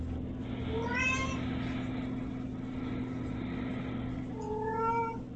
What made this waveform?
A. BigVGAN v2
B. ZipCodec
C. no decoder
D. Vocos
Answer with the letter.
C